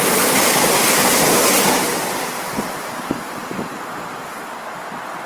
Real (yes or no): yes